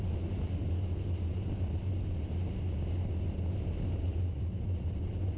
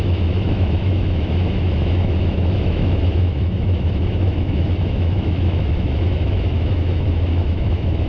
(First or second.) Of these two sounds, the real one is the first